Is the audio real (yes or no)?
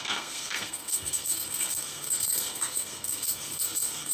no